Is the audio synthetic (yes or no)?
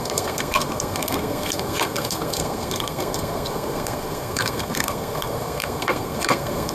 yes